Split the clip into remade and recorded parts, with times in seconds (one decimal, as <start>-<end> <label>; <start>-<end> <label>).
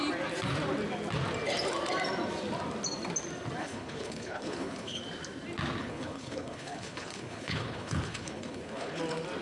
0.0-3.6 recorded; 3.6-5.0 remade; 5.0-5.8 recorded; 5.8-9.0 remade; 9.0-9.4 recorded